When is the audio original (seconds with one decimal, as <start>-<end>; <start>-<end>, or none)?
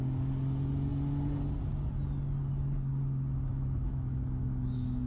0.0-3.5